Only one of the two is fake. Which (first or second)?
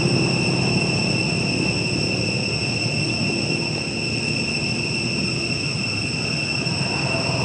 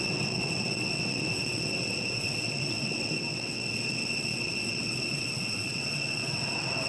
second